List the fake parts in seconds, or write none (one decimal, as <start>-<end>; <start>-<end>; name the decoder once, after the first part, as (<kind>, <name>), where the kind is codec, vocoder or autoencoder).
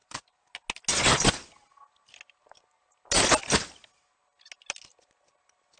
0.0-0.5 (vocoder, BigVGAN v2)